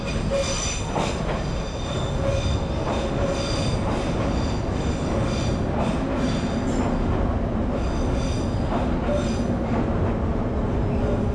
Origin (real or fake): real